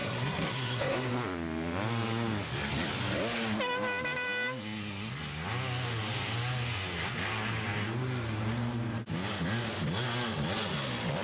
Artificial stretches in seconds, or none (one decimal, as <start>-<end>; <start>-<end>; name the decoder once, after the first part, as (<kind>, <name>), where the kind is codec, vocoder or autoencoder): 0.0-1.1 (codec, SNAC)